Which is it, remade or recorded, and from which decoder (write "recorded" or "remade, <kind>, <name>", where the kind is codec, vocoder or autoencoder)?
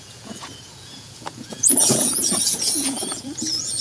remade, vocoder, Vocos